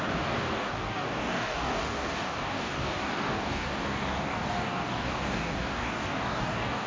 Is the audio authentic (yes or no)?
no